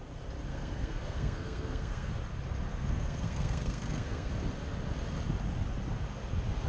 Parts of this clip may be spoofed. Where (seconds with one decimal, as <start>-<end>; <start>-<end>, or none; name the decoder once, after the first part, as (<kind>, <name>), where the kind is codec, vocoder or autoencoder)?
0.5-2.1 (codec, SNAC); 2.7-4.3